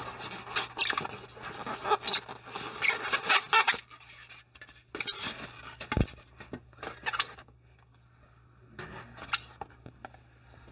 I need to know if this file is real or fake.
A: real